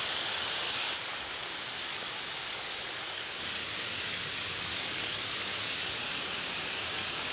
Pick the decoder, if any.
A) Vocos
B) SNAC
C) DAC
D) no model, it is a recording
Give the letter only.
C